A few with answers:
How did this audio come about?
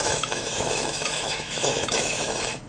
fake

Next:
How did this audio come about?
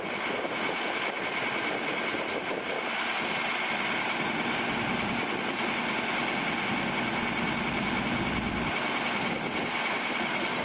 real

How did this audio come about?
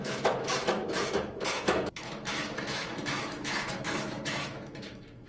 fake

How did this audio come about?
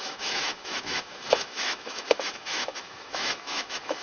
fake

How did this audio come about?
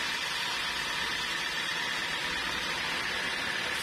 real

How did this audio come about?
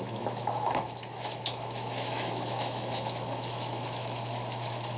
fake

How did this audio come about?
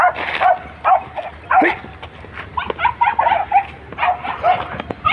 real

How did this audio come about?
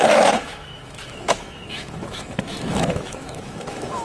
fake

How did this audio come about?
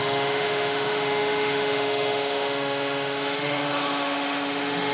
fake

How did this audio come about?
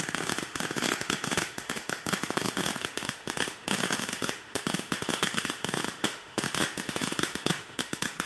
fake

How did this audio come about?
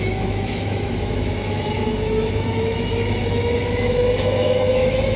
fake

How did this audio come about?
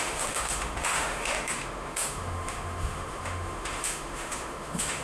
fake